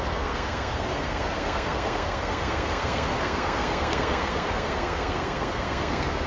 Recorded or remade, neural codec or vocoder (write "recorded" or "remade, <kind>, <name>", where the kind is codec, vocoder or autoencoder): remade, codec, SNAC